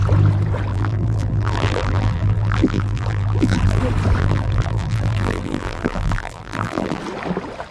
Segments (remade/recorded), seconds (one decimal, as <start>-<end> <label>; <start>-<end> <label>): 0.0-0.7 recorded; 0.7-3.8 remade; 3.8-4.2 recorded; 4.2-7.0 remade; 7.0-7.7 recorded